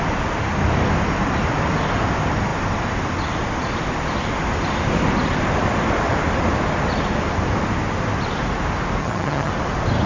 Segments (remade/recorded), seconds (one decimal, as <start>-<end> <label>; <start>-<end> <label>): 0.0-9.0 recorded; 9.0-9.5 remade; 9.5-10.1 recorded